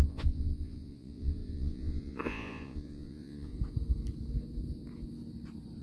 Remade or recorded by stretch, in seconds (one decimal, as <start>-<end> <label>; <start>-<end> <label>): 0.0-3.5 remade; 3.5-5.8 recorded

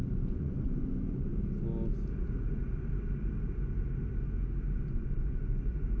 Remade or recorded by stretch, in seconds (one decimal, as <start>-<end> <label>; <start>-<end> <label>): 0.0-1.3 remade; 1.3-4.9 recorded; 4.9-6.0 remade

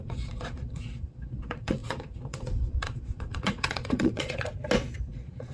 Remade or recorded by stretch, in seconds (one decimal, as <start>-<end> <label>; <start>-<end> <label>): 0.0-4.5 remade; 4.5-5.0 recorded; 5.0-5.5 remade

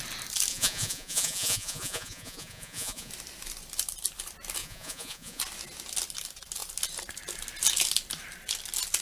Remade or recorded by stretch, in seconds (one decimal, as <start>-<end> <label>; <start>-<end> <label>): 0.0-0.5 recorded; 0.5-3.1 remade; 3.1-4.6 recorded; 4.6-5.4 remade; 5.4-9.0 recorded

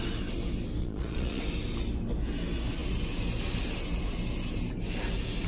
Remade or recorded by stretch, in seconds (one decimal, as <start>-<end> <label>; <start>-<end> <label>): 0.0-0.8 recorded; 0.8-1.4 remade; 1.4-5.5 recorded

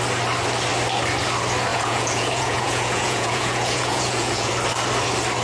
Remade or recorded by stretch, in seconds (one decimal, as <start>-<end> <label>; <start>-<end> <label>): 0.0-1.7 recorded; 1.7-4.5 remade; 4.5-5.4 recorded

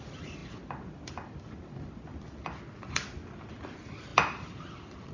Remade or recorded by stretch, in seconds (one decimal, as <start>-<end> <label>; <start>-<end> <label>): 0.0-5.1 recorded